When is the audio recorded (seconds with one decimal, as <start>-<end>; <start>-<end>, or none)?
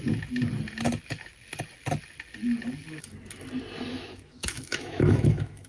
0.0-3.9